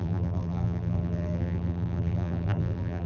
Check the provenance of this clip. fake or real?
fake